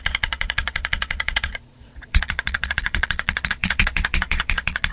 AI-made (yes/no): yes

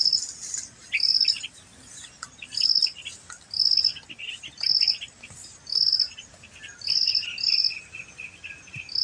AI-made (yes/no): no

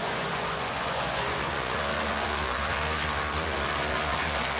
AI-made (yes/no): yes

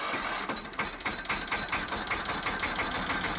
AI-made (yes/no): no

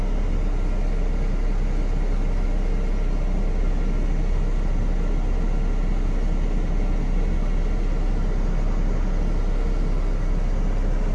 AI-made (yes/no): no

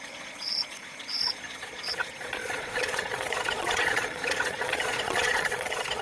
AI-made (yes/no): yes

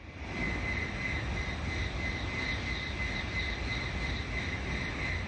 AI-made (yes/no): no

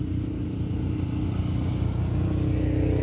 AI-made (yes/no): no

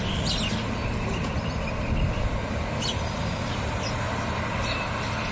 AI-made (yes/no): no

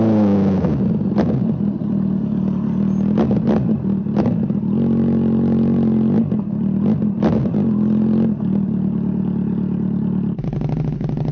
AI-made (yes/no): no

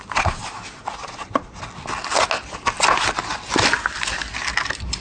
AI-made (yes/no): no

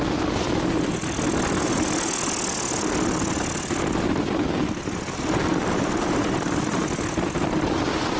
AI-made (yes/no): no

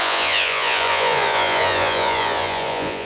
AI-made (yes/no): yes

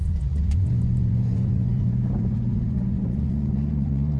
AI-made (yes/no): yes